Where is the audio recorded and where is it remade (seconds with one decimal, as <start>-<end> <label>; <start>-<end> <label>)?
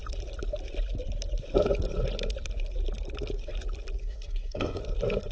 0.0-4.0 recorded; 4.0-4.8 remade; 4.8-5.3 recorded